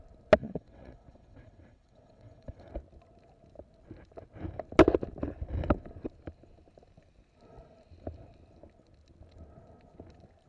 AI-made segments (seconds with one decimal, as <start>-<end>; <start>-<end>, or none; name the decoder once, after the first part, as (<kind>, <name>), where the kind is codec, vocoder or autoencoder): 0.4-2.7 (vocoder, WaveNeXt)